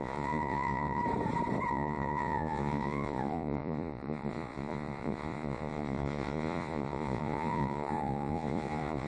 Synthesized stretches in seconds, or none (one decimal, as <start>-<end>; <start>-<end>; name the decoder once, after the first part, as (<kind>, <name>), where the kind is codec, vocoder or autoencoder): 0.0-1.0 (vocoder, Vocos); 1.7-9.1

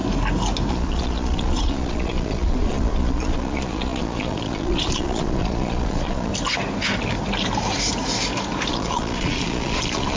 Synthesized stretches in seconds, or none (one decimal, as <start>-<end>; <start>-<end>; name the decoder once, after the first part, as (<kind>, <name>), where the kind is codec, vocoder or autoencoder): 0.7-6.3 (vocoder, Vocos); 8.7-10.2

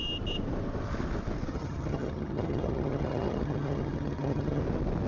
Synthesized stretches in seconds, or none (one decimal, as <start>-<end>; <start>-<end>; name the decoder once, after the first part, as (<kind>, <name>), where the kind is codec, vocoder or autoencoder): 1.5-4.6 (vocoder, HiFi-GAN)

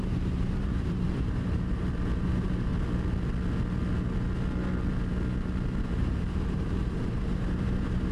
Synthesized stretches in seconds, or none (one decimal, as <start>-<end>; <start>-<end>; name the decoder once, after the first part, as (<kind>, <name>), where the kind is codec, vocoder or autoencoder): 0.0-2.7 (vocoder, BigVGAN v2); 5.8-8.1

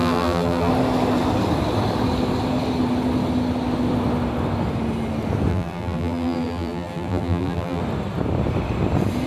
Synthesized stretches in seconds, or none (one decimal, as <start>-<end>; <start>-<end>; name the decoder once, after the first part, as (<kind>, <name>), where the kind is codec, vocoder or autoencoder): 0.0-0.7 (vocoder, BigVGAN v2); 5.5-7.8